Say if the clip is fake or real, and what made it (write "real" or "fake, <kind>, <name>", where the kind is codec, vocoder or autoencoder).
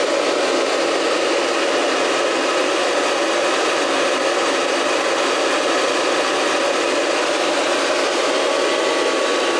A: real